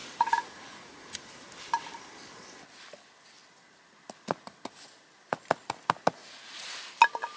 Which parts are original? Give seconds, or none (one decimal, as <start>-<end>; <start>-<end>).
1.3-6.2; 6.8-7.4